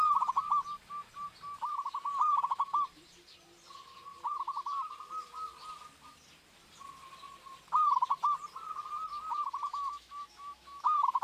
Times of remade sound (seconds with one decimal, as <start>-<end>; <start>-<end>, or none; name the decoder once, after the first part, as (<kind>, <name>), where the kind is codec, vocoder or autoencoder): 9.7-11.2 (autoencoder, DAC-VAE)

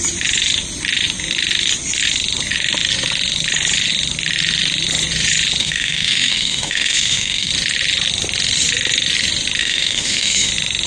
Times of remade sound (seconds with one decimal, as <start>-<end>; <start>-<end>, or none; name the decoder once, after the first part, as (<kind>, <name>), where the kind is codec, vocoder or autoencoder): 5.6-7.5 (autoencoder, DAC-VAE); 9.6-10.5

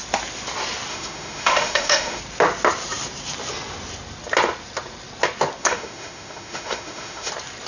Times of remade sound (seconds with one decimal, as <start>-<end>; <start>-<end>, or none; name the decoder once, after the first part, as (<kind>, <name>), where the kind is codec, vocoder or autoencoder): 0.9-2.2 (autoencoder, DAC-VAE); 5.6-7.3